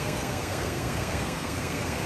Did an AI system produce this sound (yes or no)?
yes